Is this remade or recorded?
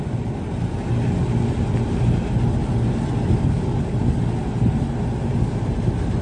recorded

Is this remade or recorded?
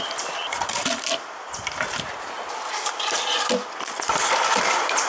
remade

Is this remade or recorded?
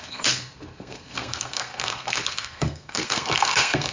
remade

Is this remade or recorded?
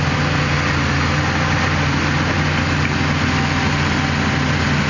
recorded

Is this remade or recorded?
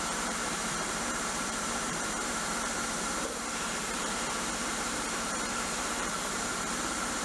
remade